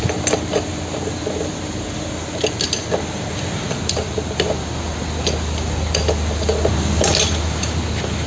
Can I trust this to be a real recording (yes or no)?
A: yes